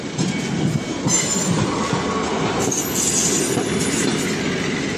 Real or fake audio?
real